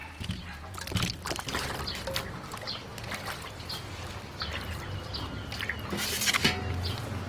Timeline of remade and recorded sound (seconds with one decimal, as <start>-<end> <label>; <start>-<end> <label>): 0.0-7.3 recorded